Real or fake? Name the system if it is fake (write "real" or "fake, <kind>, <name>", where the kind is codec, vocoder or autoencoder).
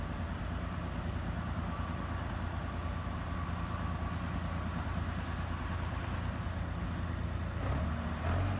real